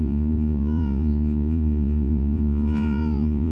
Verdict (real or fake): fake